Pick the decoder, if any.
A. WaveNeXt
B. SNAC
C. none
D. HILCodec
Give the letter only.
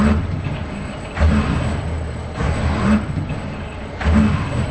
C